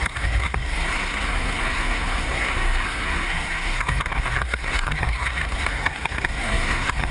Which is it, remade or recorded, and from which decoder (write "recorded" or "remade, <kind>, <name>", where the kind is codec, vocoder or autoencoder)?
remade, codec, SNAC